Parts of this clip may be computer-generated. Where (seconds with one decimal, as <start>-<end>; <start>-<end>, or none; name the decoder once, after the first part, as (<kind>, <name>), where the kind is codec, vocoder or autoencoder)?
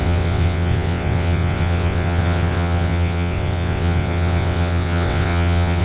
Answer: 0.0-5.8 (vocoder, WaveNeXt)